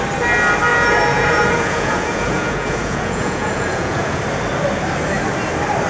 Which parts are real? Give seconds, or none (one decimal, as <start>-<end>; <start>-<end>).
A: 0.0-0.7; 4.2-5.9